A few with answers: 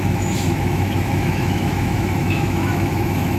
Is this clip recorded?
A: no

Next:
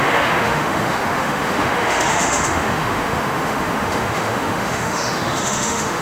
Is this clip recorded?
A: no